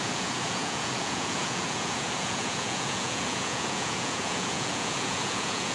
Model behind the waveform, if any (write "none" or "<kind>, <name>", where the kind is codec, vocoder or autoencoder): vocoder, Vocos